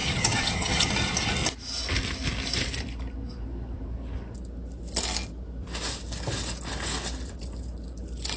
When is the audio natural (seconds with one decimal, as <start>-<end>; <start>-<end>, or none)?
0.9-8.4